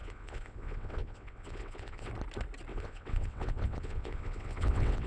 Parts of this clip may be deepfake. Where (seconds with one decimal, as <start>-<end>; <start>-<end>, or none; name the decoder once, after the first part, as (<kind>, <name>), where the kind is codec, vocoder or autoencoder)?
0.0-2.1 (vocoder, WaveNeXt); 2.7-5.1